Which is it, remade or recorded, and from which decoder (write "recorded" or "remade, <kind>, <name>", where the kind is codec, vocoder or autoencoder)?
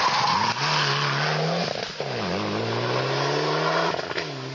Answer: recorded